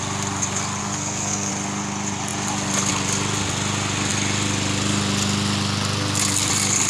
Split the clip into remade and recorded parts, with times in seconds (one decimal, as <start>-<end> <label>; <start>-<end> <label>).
0.0-0.8 recorded; 0.8-1.5 remade; 1.5-6.9 recorded